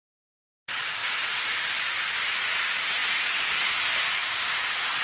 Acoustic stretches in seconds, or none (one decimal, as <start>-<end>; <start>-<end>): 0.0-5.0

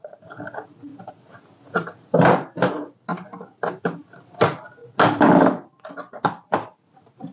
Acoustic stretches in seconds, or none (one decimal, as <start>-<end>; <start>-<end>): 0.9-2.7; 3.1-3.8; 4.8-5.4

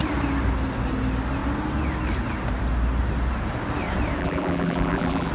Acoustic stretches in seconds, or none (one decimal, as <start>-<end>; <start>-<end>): 0.0-4.2

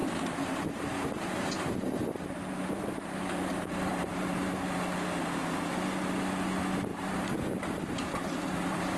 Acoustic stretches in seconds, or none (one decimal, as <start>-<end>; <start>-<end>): 4.8-6.9